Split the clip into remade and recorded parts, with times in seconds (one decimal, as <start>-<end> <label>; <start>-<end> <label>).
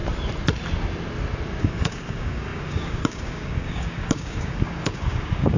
0.0-1.6 recorded; 1.6-5.6 remade